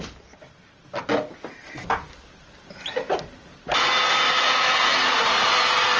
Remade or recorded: recorded